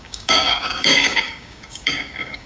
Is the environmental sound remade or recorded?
remade